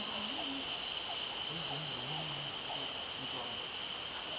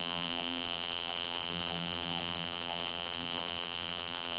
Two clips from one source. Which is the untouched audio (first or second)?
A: first